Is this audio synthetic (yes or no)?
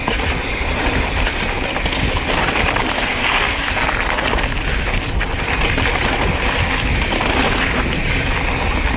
no